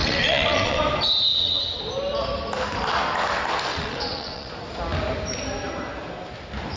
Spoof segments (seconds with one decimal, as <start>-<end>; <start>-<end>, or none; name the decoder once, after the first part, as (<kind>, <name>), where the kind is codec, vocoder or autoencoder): 0.0-0.8 (vocoder, WaveNeXt); 1.3-1.8; 3.7-4.5